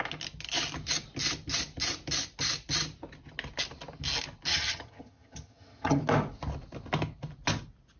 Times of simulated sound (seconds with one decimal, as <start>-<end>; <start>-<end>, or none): 4.5-6.0